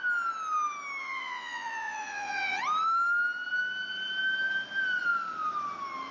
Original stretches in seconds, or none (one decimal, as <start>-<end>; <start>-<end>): 0.0-1.0; 2.6-6.1